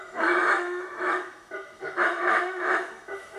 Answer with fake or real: fake